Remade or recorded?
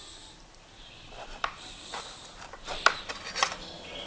recorded